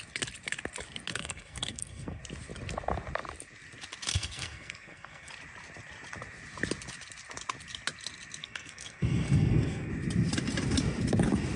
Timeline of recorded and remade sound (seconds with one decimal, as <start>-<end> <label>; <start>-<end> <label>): 0.0-1.1 recorded; 1.1-2.2 remade; 2.2-4.1 recorded; 4.1-5.3 remade; 5.3-8.4 recorded; 8.4-9.9 remade; 9.9-11.6 recorded